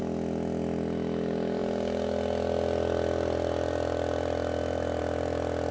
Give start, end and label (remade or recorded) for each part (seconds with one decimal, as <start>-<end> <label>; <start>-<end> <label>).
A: 0.0-5.7 recorded